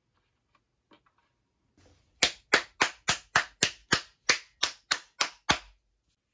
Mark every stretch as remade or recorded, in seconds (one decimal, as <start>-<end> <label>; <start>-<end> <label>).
0.0-6.3 recorded